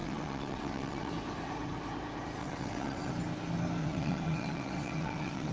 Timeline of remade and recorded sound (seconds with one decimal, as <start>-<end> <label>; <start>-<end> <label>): 0.0-1.1 remade; 1.1-2.4 recorded; 2.4-3.1 remade; 3.1-3.8 recorded; 3.8-5.5 remade